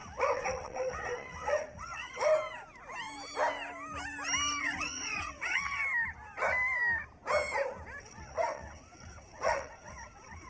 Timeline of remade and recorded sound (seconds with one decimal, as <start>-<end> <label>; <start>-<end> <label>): 0.0-2.3 remade; 2.3-4.6 recorded; 4.6-5.8 remade; 5.8-8.0 recorded; 8.0-10.5 remade